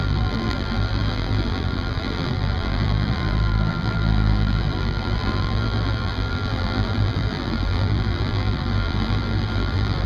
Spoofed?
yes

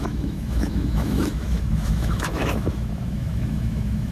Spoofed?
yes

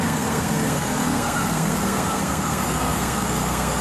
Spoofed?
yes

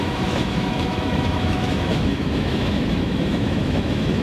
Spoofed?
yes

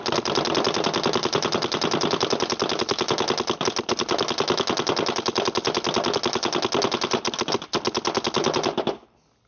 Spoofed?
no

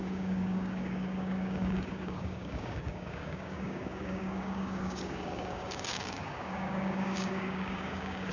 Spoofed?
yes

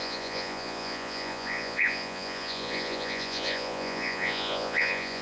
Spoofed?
yes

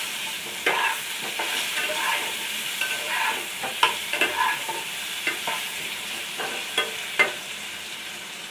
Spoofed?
yes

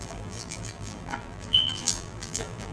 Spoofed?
yes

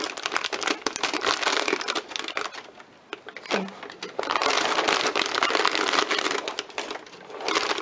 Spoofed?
no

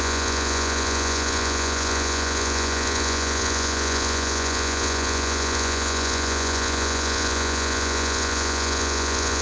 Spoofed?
yes